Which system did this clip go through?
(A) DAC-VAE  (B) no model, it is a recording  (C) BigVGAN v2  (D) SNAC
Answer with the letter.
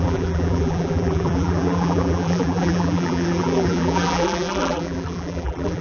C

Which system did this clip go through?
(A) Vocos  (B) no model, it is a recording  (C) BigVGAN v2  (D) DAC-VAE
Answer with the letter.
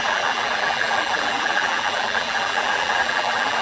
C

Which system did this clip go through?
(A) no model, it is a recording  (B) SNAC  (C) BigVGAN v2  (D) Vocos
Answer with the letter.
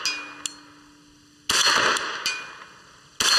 A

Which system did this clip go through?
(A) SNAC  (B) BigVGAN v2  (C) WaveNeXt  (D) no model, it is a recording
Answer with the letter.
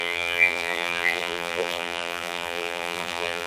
B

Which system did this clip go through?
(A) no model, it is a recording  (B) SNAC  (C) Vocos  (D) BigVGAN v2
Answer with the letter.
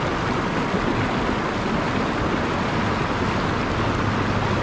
A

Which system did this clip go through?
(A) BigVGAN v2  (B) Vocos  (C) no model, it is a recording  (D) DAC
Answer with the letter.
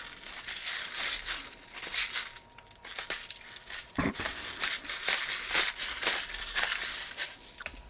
A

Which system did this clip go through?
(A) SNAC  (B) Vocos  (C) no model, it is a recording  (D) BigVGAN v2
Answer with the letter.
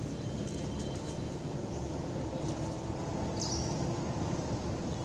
C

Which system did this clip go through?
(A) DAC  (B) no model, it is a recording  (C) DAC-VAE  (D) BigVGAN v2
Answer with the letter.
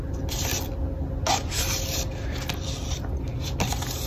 B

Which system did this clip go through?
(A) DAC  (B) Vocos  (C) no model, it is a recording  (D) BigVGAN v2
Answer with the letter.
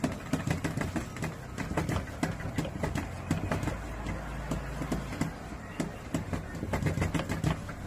C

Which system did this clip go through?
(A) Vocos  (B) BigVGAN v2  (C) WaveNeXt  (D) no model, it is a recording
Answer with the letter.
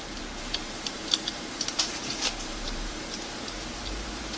B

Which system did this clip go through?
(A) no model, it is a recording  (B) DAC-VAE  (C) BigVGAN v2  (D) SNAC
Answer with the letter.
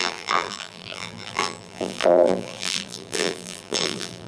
C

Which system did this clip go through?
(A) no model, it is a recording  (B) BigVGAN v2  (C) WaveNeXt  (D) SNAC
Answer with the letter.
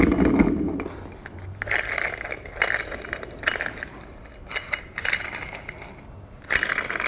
A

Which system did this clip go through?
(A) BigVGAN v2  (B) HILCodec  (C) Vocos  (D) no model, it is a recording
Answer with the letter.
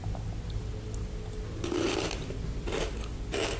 D